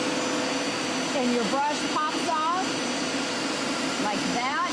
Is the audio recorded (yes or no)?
yes